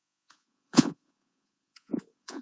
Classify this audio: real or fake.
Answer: fake